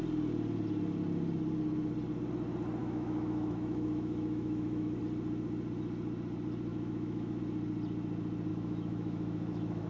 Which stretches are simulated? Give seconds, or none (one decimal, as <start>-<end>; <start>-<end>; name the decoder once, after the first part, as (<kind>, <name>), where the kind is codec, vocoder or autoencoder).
2.8-5.0 (autoencoder, DAC-VAE); 6.7-7.4; 8.5-9.9